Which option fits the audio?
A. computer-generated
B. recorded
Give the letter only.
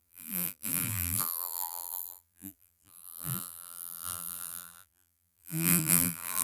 A